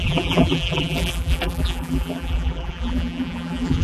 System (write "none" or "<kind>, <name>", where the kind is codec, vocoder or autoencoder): vocoder, BigVGAN v2